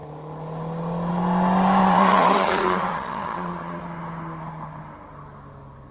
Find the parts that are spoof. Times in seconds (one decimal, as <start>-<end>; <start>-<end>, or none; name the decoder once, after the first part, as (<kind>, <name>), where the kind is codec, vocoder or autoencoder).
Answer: 1.8-3.8 (vocoder, Vocos)